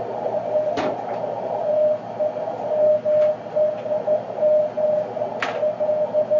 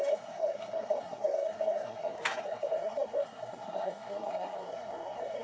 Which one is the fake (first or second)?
second